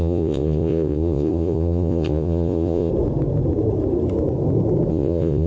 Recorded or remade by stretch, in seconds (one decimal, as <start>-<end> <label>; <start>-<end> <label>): 0.0-2.9 remade; 2.9-4.9 recorded; 4.9-5.5 remade